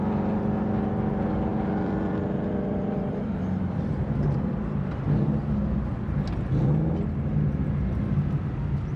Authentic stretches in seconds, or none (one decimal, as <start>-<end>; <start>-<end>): 0.0-1.5; 4.5-9.0